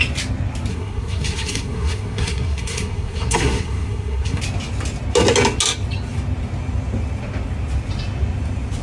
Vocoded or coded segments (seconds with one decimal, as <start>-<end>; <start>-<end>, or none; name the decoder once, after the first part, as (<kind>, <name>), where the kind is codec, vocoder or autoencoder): 0.7-4.4 (codec, SNAC)